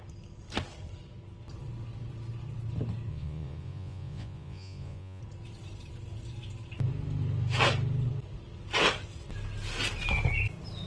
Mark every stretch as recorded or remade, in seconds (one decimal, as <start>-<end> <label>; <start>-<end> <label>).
0.0-3.1 recorded; 3.1-5.2 remade; 5.2-10.9 recorded